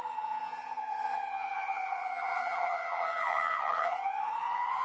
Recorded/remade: remade